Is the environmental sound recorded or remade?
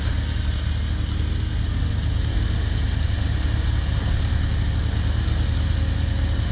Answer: recorded